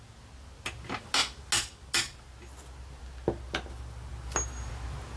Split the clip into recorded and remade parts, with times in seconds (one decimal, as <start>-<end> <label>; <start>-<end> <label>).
0.0-5.2 recorded

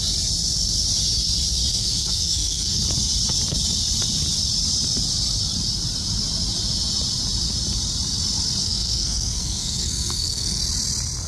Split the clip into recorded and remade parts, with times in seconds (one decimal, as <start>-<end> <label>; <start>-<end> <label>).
0.0-1.7 recorded; 1.7-2.8 remade; 2.8-8.6 recorded; 8.6-10.6 remade; 10.6-11.3 recorded

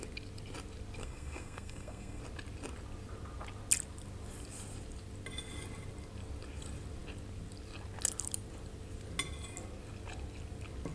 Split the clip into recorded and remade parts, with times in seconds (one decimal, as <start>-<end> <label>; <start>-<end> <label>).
0.0-1.0 recorded; 1.0-2.2 remade; 2.2-10.9 recorded